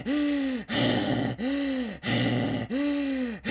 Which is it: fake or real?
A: real